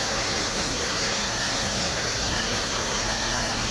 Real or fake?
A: fake